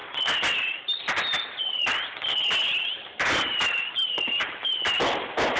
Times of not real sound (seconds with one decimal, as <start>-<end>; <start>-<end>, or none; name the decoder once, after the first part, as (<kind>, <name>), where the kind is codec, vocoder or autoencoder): none